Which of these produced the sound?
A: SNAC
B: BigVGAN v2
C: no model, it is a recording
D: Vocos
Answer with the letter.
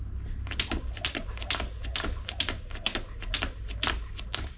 C